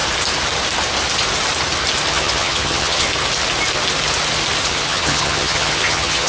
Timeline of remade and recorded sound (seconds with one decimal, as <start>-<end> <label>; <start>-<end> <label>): 0.0-2.1 recorded; 2.1-3.1 remade; 3.1-4.7 recorded; 4.7-6.3 remade